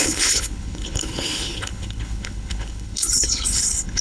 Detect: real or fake fake